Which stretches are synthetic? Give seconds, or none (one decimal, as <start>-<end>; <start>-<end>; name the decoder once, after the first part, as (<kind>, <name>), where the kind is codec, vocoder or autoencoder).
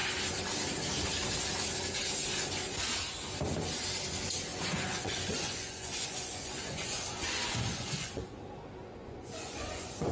4.5-8.4 (vocoder, Vocos); 8.8-10.1